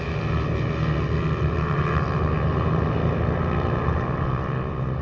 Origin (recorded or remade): recorded